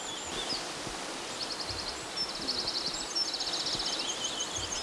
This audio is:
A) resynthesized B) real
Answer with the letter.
B